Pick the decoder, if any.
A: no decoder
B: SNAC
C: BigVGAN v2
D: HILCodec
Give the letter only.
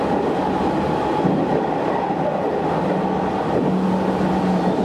A